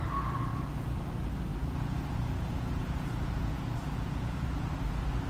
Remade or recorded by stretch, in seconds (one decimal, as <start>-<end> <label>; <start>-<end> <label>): 0.0-0.5 recorded; 0.5-1.1 remade; 1.1-1.5 recorded; 1.5-4.7 remade; 4.7-5.3 recorded